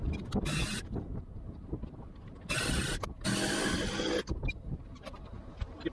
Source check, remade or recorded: recorded